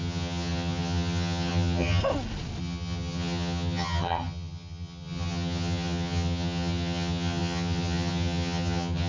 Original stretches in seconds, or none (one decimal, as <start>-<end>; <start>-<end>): 2.0-2.6